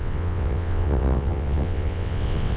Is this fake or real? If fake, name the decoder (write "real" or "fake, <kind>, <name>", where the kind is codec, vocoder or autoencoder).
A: fake, vocoder, WaveNeXt